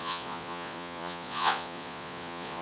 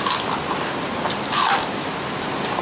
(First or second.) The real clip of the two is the second